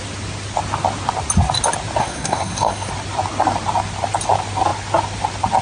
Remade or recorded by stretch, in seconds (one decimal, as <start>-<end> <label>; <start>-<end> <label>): 0.0-2.0 recorded; 2.0-2.9 remade; 2.9-5.6 recorded